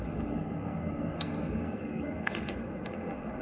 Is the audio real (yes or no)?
no